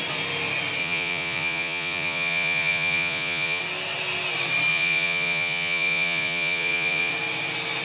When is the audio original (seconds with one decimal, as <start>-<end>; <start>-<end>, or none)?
0.0-0.8; 3.6-4.7; 7.1-7.8